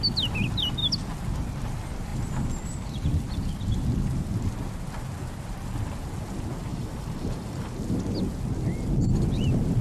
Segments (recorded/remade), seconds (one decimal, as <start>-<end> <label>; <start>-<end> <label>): 0.0-6.7 recorded; 6.7-7.7 remade; 7.7-9.8 recorded